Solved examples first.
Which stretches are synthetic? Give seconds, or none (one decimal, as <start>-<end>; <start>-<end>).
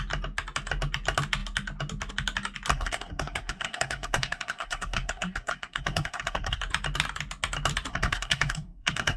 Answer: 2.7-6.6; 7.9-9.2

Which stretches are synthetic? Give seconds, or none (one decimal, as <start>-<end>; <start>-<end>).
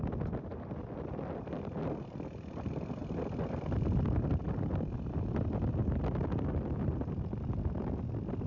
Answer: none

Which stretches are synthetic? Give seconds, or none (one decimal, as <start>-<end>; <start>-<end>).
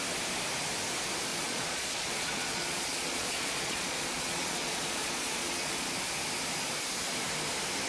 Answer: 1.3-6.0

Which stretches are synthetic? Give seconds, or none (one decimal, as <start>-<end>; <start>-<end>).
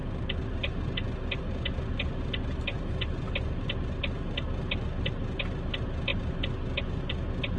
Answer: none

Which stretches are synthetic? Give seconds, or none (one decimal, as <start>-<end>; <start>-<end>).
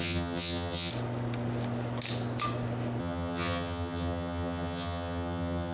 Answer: 0.0-0.9; 3.0-5.7